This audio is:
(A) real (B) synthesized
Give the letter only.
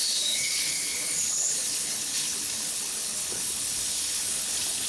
B